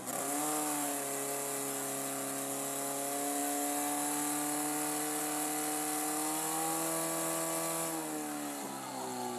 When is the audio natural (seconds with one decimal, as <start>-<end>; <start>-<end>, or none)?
0.0-9.4